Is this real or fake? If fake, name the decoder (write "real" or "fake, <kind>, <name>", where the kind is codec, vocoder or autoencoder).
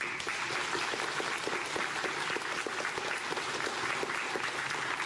real